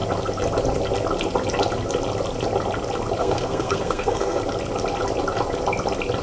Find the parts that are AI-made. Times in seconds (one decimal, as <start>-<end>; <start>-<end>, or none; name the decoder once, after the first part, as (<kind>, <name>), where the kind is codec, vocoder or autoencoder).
3.2-4.4 (codec, SNAC)